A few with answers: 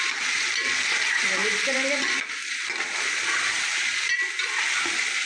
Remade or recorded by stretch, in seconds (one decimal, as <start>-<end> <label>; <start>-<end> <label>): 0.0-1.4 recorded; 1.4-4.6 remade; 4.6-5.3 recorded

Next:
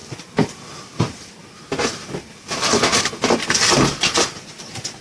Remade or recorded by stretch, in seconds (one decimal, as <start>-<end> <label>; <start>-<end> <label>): 0.0-3.0 recorded; 3.0-5.0 remade

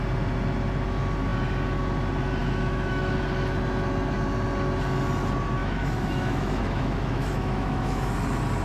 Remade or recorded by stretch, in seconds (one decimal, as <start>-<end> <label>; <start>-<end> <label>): 0.0-2.4 recorded; 2.4-3.1 remade; 3.1-5.6 recorded; 5.6-8.1 remade; 8.1-8.6 recorded

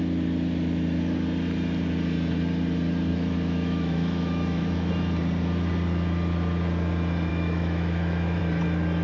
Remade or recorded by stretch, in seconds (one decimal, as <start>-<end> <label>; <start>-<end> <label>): 0.0-3.1 recorded; 3.1-4.9 remade; 4.9-7.3 recorded; 7.3-8.4 remade; 8.4-9.0 recorded